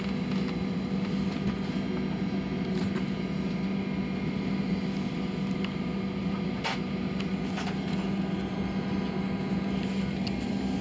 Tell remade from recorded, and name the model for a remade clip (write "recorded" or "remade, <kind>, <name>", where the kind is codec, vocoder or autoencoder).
recorded